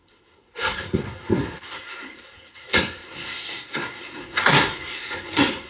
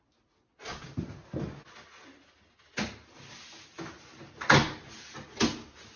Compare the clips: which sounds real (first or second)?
second